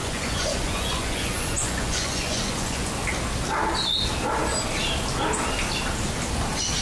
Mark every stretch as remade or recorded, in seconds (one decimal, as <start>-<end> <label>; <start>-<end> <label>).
0.0-2.9 remade; 2.9-6.8 recorded